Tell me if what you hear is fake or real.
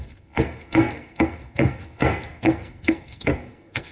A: fake